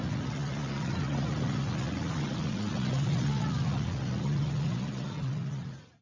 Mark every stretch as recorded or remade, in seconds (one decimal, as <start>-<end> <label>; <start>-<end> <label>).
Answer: 0.0-6.0 remade